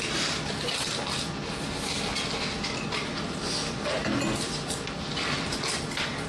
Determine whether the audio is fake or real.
real